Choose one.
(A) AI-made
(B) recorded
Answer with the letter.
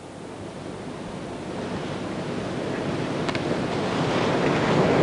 B